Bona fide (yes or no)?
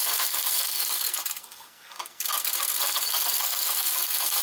no